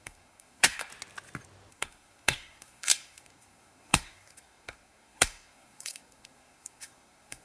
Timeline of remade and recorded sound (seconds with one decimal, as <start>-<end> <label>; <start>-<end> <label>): 0.0-0.9 remade; 0.9-1.7 recorded; 1.7-7.4 remade